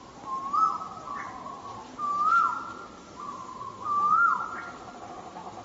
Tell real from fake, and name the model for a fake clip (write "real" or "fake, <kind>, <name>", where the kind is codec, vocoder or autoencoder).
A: real